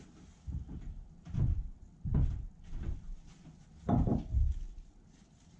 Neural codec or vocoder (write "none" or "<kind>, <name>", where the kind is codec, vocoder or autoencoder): none